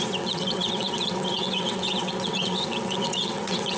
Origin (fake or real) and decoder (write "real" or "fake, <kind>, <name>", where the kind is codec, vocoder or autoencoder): fake, vocoder, WaveNeXt